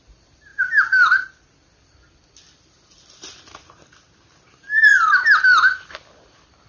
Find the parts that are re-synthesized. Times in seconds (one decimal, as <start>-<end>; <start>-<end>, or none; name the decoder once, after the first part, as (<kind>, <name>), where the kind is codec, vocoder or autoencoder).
0.0-0.5 (vocoder, BigVGAN v2); 4.5-4.9; 5.4-6.7